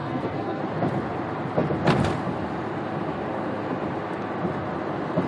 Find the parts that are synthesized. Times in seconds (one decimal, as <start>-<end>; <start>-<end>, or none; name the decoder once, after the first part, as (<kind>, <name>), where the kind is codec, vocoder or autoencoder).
0.0-0.6 (codec, SNAC)